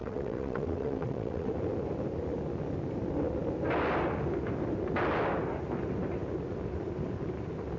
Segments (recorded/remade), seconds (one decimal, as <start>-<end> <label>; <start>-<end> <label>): 0.0-1.5 remade; 1.5-7.8 recorded